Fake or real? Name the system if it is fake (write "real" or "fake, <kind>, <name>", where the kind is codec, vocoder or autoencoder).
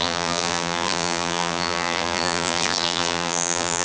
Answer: fake, vocoder, BigVGAN v2